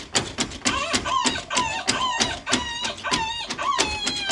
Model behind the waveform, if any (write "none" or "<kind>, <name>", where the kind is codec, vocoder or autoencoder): none